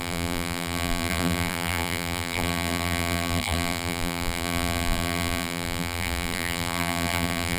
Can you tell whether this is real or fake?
fake